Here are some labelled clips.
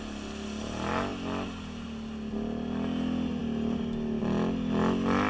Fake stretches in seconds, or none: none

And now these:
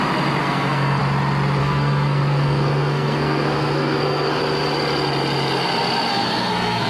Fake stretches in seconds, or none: 0.4-1.0 (codec, SNAC); 1.6-4.4; 6.1-6.9

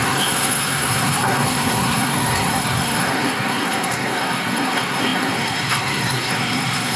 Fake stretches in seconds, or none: 0.0-7.0 (codec, SNAC)

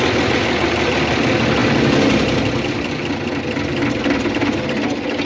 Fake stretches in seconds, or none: none

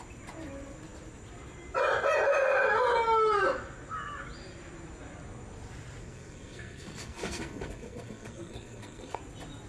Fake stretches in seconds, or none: 6.0-9.2 (codec, SNAC)

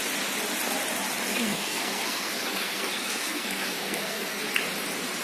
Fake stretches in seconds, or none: 1.3-4.4 (codec, SNAC)

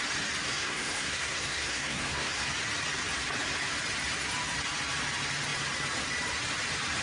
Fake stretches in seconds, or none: 0.5-2.5 (codec, SNAC)